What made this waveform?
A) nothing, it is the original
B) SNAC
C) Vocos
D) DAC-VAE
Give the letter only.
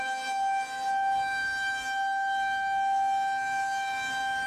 A